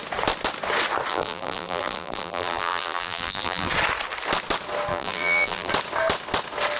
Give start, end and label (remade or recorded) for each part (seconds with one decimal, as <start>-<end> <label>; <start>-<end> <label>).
0.0-1.1 recorded; 1.1-3.7 remade; 3.7-4.9 recorded; 4.9-5.7 remade; 5.7-6.8 recorded